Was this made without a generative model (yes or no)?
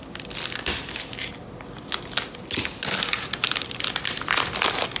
yes